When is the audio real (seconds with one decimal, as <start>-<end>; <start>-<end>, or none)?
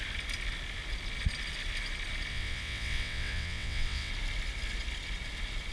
0.0-2.3; 4.1-5.7